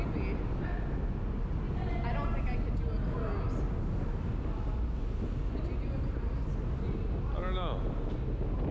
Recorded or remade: recorded